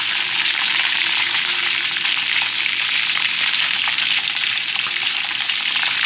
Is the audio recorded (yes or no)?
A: no